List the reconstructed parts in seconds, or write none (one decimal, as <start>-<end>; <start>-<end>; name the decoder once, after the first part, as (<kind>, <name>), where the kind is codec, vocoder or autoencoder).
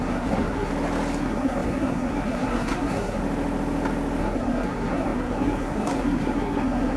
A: 0.0-0.7 (codec, SNAC); 1.2-3.2; 4.2-7.0